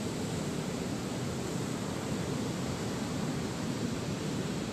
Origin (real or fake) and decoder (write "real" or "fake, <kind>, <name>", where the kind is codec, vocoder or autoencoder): fake, vocoder, BigVGAN v2